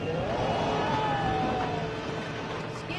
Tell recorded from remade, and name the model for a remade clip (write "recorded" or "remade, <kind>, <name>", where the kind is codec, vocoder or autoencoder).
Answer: recorded